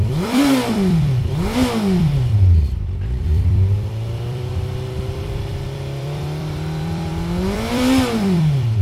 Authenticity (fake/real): fake